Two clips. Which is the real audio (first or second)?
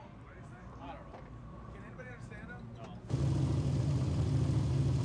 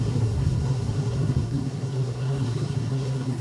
first